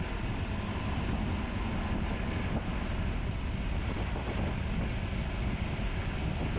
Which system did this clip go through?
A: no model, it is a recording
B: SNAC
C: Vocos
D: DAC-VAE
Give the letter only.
A